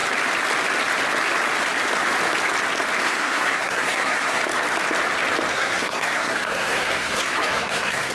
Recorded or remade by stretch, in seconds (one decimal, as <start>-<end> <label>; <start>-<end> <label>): 0.0-3.0 recorded; 3.0-4.4 remade; 4.4-5.5 recorded; 5.5-8.1 remade